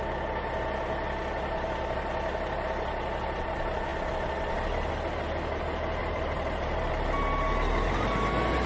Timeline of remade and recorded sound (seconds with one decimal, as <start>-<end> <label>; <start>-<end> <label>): 0.0-6.0 recorded; 6.0-6.9 remade; 6.9-8.7 recorded